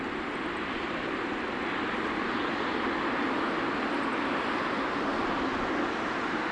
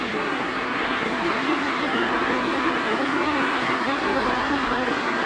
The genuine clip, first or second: first